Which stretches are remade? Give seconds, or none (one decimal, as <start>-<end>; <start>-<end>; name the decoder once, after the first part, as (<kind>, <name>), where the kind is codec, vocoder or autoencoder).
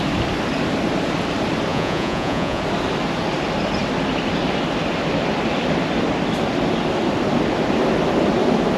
1.7-2.6 (vocoder, Vocos)